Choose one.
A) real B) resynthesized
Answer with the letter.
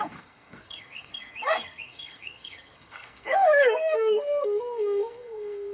B